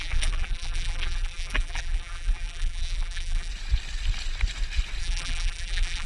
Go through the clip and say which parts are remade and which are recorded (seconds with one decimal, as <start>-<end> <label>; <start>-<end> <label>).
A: 0.0-3.5 remade; 3.5-5.0 recorded; 5.0-6.1 remade